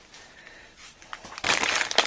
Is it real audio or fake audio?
real